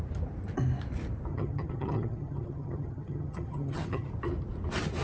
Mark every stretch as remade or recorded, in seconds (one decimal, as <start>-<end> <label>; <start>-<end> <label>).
0.0-1.3 recorded; 1.3-4.1 remade; 4.1-5.0 recorded